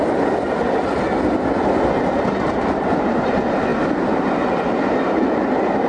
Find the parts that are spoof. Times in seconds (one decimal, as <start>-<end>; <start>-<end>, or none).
none